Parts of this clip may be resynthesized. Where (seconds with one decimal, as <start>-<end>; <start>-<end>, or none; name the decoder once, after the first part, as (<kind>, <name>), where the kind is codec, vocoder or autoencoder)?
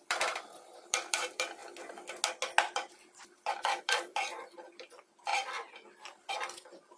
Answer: 0.0-1.6 (vocoder, BigVGAN v2); 3.8-5.3; 6.3-7.0